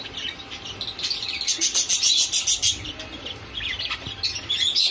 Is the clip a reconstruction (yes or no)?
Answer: no